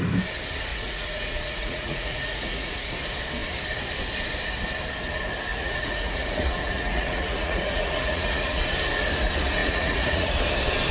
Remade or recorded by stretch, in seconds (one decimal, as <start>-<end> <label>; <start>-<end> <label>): 0.0-0.7 recorded; 0.7-2.9 remade; 2.9-5.5 recorded; 5.5-8.6 remade; 8.6-9.6 recorded; 9.6-10.3 remade; 10.3-10.9 recorded